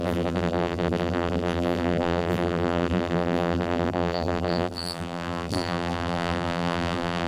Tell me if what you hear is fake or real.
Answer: fake